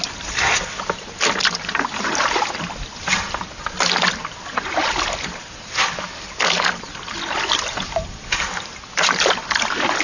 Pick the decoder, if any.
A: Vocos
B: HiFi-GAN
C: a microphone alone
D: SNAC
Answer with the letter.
C